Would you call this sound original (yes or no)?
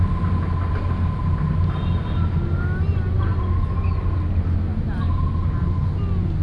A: yes